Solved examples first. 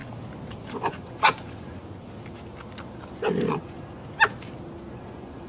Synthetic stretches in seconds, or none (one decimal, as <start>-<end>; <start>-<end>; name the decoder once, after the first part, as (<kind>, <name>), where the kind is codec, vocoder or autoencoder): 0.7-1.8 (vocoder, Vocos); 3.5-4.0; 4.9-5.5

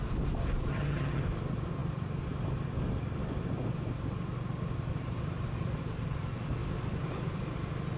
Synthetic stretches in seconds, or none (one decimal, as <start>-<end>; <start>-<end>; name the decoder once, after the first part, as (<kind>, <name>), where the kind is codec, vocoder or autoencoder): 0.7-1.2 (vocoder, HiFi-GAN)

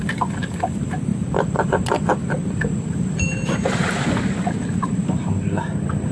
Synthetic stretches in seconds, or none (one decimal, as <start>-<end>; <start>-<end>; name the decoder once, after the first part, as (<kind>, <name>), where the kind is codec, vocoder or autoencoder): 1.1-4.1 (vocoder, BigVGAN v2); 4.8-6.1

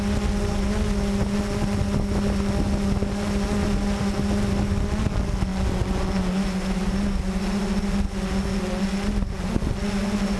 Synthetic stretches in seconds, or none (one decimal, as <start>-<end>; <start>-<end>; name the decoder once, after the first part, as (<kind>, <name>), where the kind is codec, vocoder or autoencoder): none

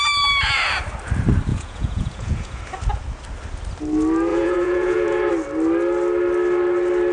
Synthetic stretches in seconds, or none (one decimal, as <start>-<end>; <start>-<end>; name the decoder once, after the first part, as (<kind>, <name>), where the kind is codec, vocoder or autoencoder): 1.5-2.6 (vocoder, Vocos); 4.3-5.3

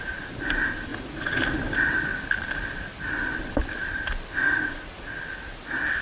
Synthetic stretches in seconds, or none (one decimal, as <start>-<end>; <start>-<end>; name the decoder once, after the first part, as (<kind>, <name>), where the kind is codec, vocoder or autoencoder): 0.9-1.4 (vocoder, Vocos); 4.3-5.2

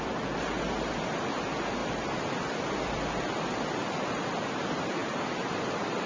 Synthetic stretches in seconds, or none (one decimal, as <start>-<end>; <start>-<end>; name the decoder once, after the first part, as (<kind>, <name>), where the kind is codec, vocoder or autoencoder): none

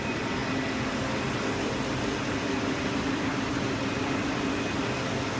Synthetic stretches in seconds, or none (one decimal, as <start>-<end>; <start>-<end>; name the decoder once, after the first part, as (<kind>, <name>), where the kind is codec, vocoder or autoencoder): none